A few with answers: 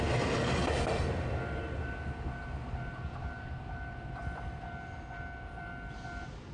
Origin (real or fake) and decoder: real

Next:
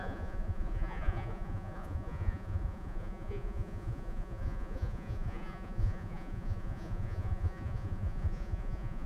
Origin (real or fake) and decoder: fake, vocoder, Vocos